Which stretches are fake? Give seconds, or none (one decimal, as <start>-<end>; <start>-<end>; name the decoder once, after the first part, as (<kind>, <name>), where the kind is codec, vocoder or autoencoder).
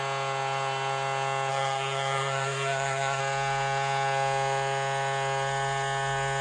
1.5-3.2 (codec, SNAC)